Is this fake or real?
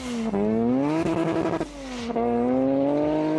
real